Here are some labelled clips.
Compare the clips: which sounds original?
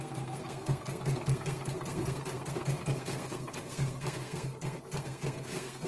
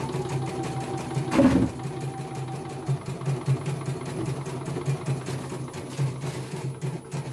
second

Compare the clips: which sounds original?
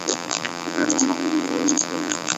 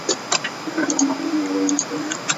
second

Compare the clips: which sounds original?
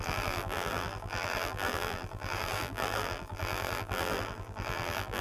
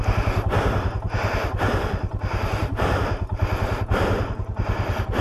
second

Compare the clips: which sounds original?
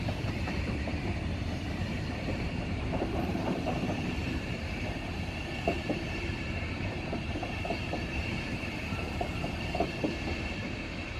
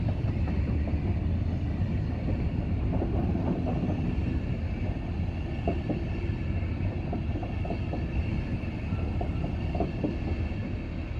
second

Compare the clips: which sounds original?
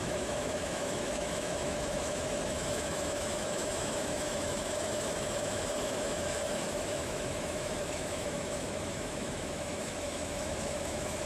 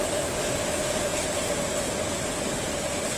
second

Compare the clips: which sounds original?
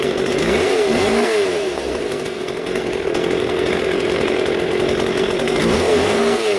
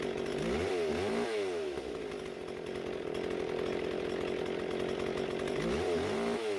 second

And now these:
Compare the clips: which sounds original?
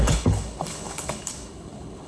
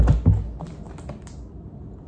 second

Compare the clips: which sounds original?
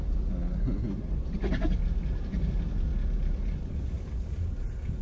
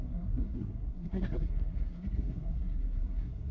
first